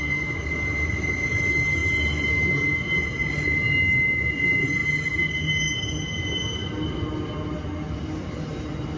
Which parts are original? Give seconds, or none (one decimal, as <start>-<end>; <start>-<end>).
0.0-9.0